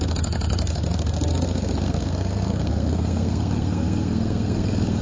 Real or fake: fake